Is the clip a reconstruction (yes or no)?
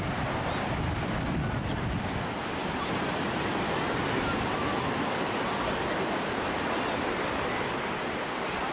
no